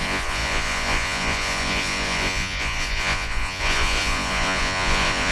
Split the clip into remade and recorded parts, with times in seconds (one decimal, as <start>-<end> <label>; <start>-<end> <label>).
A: 0.0-5.3 remade